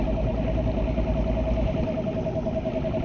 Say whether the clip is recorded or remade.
recorded